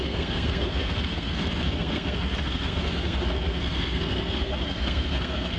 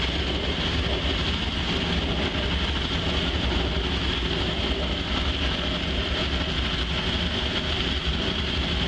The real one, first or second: second